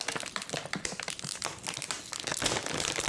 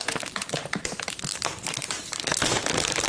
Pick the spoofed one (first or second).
second